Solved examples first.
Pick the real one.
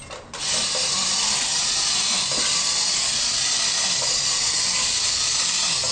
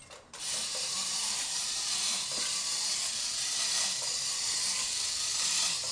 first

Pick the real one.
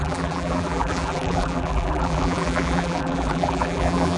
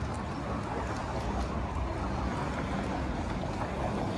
second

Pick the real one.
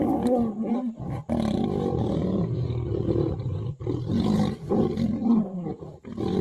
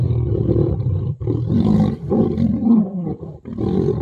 first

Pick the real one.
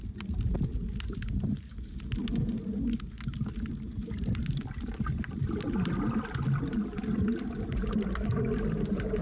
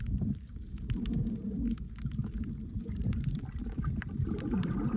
first